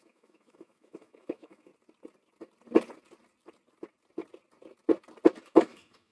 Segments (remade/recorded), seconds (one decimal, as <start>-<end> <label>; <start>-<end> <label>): 0.0-1.7 remade; 1.7-5.4 recorded; 5.4-6.1 remade